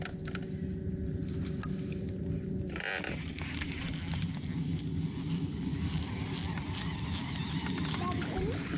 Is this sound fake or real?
real